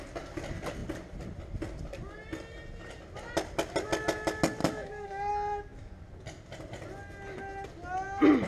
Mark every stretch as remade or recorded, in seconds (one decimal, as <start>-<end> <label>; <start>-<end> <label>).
0.0-4.6 recorded; 4.6-5.3 remade; 5.3-8.5 recorded